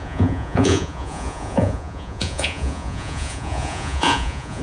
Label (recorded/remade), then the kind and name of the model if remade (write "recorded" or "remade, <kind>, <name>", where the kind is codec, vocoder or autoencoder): remade, vocoder, Vocos